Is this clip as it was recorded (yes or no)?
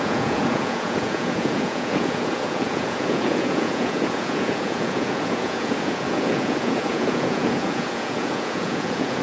no